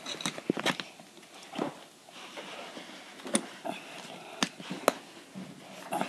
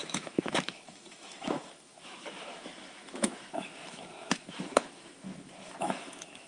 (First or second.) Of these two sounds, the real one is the first